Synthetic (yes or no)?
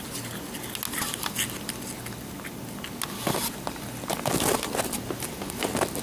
no